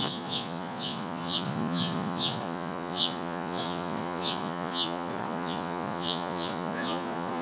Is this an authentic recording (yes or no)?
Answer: no